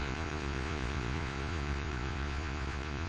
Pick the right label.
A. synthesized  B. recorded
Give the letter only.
A